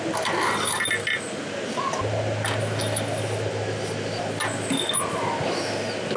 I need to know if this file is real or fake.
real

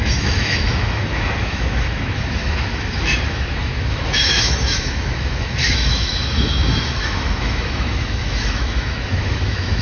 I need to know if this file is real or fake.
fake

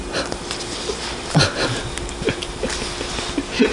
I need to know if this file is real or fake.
real